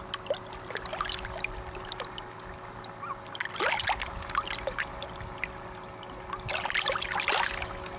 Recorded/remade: recorded